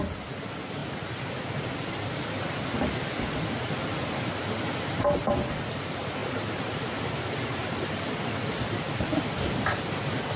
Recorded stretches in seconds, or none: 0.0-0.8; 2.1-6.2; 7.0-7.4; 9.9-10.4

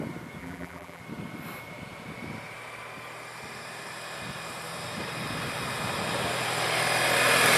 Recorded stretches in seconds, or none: 0.0-0.4; 1.0-7.6